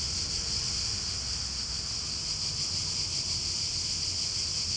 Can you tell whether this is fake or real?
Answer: real